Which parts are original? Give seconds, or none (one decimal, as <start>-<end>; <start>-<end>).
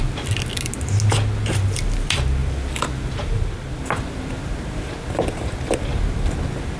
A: 0.0-6.8